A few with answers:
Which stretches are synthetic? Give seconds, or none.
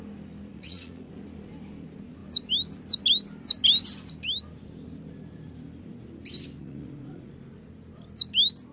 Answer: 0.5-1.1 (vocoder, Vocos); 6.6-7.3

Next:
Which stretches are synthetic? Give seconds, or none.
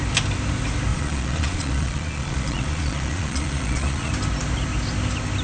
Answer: 0.9-4.1 (vocoder, Vocos)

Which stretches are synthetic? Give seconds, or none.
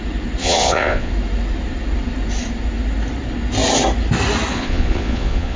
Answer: 0.4-1.1 (vocoder, Vocos); 4.5-5.6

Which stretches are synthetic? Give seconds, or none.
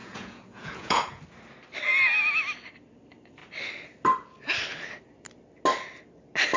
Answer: 0.0-1.2 (vocoder, Vocos)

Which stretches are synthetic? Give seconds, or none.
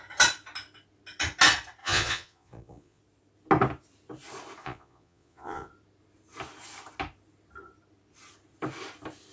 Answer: 1.8-3.0 (vocoder, Vocos); 4.6-5.7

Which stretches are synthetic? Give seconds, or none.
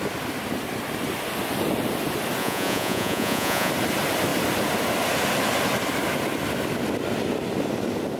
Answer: 2.4-3.7 (vocoder, Vocos)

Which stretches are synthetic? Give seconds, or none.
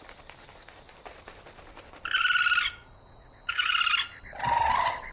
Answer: 2.8-3.7 (vocoder, Vocos)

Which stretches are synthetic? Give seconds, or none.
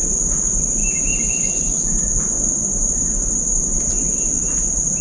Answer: none